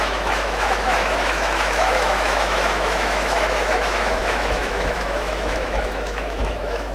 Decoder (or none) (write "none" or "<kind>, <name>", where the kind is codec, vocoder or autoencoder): autoencoder, DAC-VAE